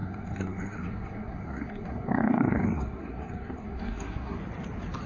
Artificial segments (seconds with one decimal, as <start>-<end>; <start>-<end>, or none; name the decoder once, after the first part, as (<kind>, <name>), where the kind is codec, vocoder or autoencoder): 0.0-4.4 (codec, SNAC)